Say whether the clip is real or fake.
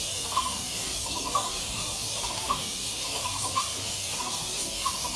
fake